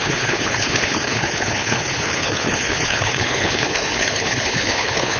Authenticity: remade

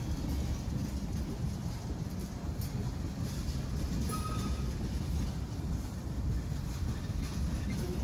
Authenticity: recorded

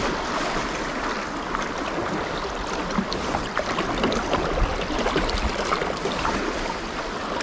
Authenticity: recorded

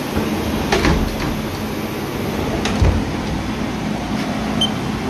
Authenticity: recorded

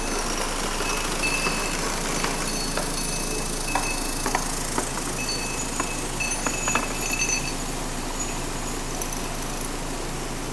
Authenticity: recorded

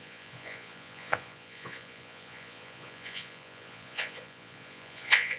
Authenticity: remade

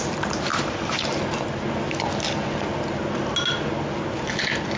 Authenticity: recorded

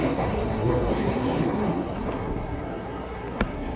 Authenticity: remade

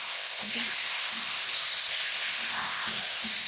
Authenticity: remade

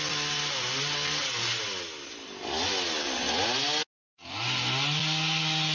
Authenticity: recorded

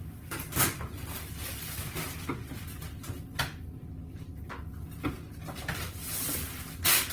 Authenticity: recorded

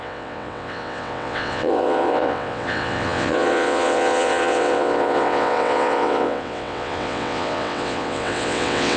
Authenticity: remade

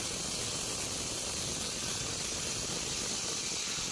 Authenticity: recorded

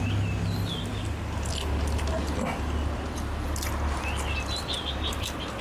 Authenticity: recorded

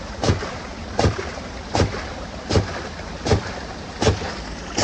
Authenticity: remade